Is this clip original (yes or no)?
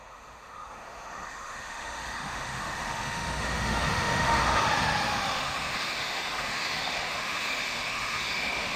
no